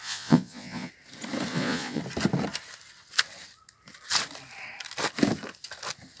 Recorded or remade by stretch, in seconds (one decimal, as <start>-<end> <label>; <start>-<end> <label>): 0.0-0.9 remade; 0.9-1.5 recorded; 1.5-2.0 remade; 2.0-6.2 recorded

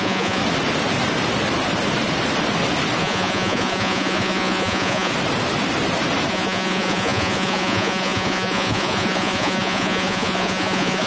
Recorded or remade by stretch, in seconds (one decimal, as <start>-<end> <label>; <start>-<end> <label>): 0.0-0.4 remade; 0.4-3.0 recorded; 3.0-5.1 remade; 5.1-6.3 recorded; 6.3-11.1 remade

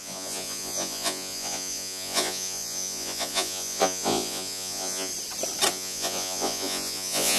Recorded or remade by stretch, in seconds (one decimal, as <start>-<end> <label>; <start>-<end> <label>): 0.0-5.1 remade; 5.1-5.7 recorded; 5.7-7.4 remade

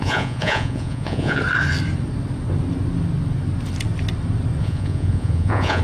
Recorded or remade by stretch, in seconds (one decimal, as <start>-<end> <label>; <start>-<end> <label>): 0.0-1.4 remade; 1.4-4.6 recorded; 4.6-5.8 remade

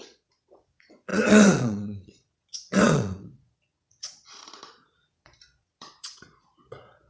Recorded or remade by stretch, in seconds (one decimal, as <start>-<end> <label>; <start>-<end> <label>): 0.0-7.1 remade

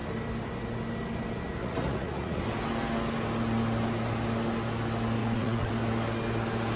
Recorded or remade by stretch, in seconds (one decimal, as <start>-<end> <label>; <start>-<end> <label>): 0.0-1.6 recorded; 1.6-2.4 remade; 2.4-5.2 recorded; 5.2-5.7 remade; 5.7-6.8 recorded